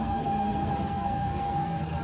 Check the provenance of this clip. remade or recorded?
remade